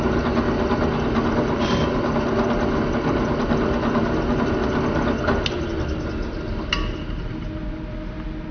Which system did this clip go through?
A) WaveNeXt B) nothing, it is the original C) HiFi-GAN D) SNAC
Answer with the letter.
B